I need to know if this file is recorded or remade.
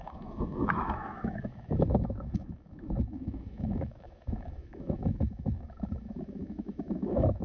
remade